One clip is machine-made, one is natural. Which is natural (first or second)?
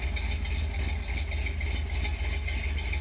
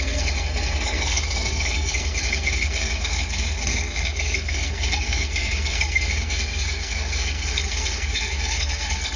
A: first